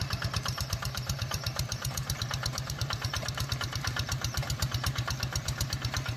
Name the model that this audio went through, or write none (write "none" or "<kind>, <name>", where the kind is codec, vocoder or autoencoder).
vocoder, BigVGAN v2